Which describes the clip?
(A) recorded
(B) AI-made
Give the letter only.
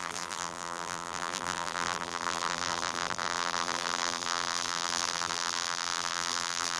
B